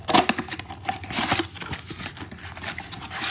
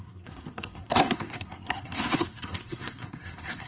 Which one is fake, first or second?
second